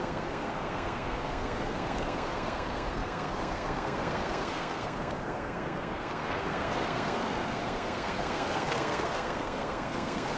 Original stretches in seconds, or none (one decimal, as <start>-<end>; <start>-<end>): none